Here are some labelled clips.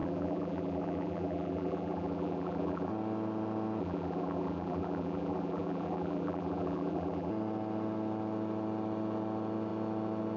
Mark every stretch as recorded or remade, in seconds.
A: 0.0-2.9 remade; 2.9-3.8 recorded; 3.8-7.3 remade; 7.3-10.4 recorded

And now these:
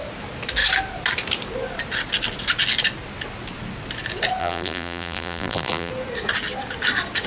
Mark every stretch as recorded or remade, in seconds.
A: 0.0-4.4 recorded; 4.4-5.9 remade; 5.9-7.3 recorded

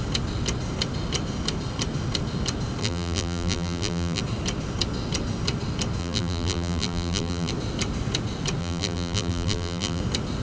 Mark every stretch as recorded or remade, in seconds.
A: 0.0-2.8 recorded; 2.8-4.2 remade; 4.2-6.0 recorded; 6.0-7.5 remade; 7.5-8.6 recorded; 8.6-10.0 remade; 10.0-10.4 recorded

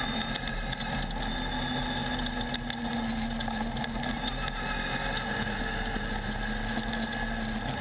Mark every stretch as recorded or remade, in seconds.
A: 0.0-7.8 recorded

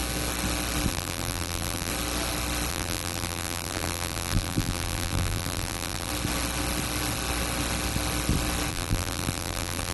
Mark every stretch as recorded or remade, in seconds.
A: 0.0-0.9 recorded; 0.9-1.9 remade; 1.9-2.7 recorded; 2.7-6.1 remade; 6.1-8.7 recorded; 8.7-9.9 remade

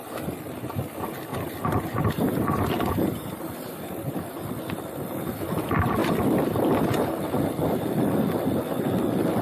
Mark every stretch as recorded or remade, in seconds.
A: 0.0-1.3 recorded; 1.3-4.5 remade; 4.5-9.4 recorded

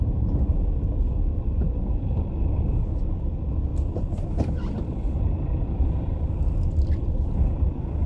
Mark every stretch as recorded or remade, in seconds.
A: 0.0-3.7 recorded; 3.7-8.1 remade